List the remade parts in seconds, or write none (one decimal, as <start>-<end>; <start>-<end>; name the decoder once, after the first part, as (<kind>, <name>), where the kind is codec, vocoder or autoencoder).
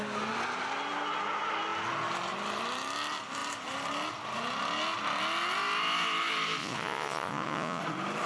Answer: 6.6-7.8 (vocoder, Vocos)